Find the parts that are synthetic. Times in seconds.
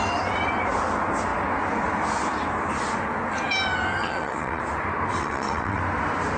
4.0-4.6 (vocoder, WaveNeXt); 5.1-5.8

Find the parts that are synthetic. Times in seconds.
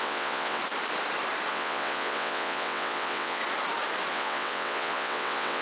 0.0-0.6 (vocoder, WaveNeXt); 1.5-3.4; 4.1-5.6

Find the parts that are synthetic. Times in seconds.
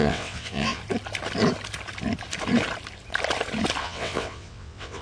0.0-0.8 (vocoder, WaveNeXt); 3.8-5.0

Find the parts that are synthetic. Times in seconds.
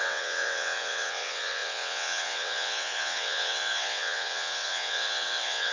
0.0-5.7 (vocoder, WaveNeXt)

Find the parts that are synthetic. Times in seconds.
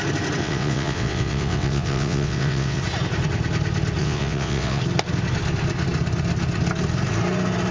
0.4-2.8 (vocoder, WaveNeXt); 4.0-4.8